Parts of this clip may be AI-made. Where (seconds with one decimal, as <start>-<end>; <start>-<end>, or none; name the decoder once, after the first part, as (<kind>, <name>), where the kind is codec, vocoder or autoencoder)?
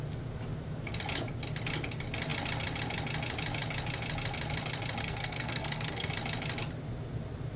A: 5.0-6.1 (codec, SNAC)